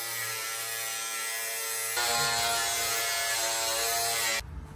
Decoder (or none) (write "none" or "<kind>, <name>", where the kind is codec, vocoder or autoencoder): none